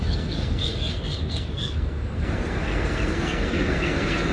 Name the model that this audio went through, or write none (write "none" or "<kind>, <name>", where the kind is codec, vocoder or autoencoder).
codec, SNAC